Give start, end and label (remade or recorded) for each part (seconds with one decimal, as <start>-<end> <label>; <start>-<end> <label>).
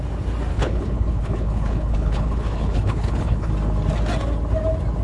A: 0.0-0.5 recorded; 0.5-3.5 remade; 3.5-5.0 recorded